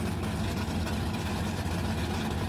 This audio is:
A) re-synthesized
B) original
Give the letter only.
B